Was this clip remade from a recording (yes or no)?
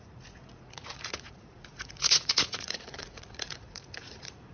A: yes